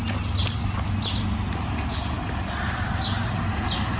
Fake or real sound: real